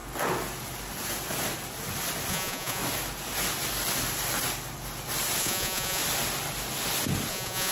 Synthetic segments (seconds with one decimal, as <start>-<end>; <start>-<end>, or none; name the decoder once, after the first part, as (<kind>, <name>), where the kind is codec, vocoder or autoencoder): 2.3-2.8 (vocoder, Vocos); 5.4-6.0; 7.3-7.7